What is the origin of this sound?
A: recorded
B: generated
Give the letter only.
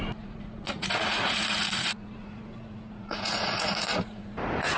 B